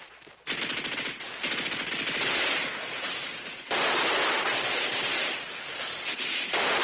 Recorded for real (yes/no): no